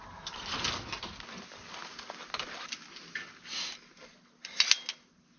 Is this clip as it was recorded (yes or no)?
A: yes